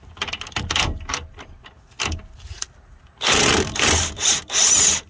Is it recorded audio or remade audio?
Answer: recorded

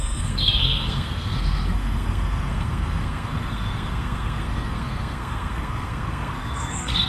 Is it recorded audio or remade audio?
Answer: remade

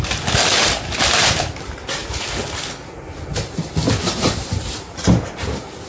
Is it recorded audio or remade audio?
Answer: recorded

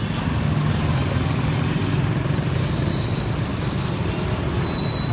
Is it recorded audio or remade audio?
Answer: recorded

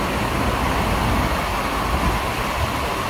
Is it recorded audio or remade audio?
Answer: recorded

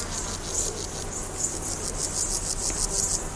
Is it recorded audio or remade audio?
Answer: recorded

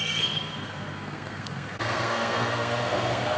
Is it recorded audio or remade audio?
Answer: remade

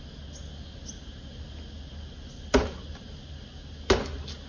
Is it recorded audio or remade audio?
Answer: recorded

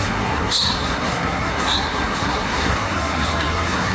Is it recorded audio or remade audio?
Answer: remade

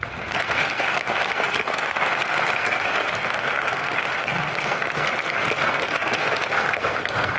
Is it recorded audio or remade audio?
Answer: remade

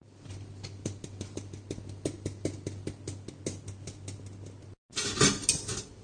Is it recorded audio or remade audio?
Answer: recorded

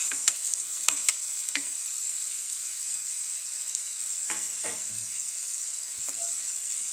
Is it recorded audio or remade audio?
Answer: remade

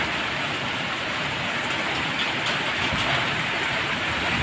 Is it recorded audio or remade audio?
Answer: recorded